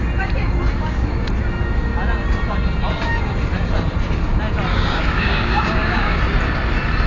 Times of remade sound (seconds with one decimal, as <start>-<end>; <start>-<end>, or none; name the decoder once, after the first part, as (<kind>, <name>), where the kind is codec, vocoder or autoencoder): 4.7-6.2 (codec, DAC)